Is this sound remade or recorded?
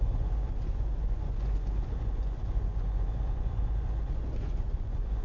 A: remade